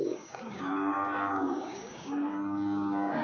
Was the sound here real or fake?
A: fake